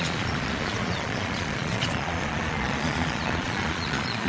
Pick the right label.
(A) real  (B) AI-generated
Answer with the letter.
B